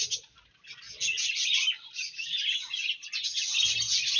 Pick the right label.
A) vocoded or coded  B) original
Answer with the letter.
B